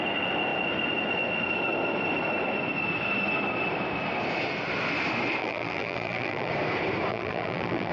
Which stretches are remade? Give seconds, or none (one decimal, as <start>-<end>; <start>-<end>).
5.4-6.5; 7.1-7.9